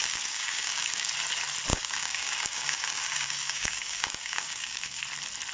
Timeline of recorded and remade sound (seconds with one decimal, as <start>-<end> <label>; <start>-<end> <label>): 0.0-1.1 remade; 1.1-1.7 recorded; 1.7-5.0 remade; 5.0-5.5 recorded